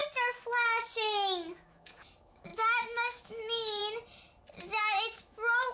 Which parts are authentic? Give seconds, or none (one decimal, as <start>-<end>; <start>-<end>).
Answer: 0.0-1.5; 3.8-4.8